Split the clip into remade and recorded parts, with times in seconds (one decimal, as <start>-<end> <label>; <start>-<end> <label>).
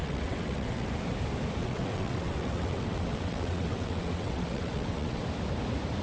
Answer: 0.0-0.9 remade; 0.9-1.6 recorded; 1.6-5.2 remade; 5.2-6.0 recorded